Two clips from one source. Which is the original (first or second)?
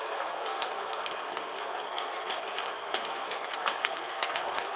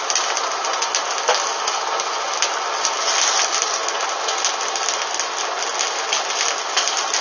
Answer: second